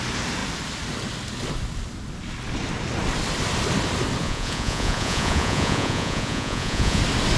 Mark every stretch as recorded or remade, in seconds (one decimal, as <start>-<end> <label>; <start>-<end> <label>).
0.0-4.2 recorded; 4.2-7.0 remade; 7.0-7.4 recorded